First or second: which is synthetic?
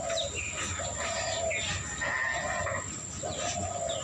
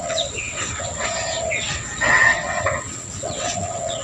second